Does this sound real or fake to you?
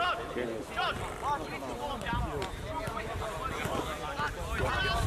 real